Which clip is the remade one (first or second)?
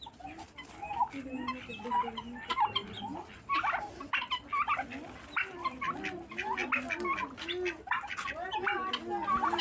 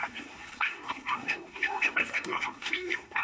second